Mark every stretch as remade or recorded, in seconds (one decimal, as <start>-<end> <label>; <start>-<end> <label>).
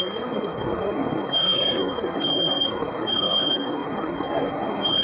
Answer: 0.0-5.0 remade